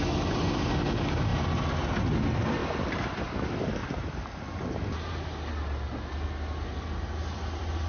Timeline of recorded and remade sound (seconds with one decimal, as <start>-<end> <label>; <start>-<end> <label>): 0.0-7.9 recorded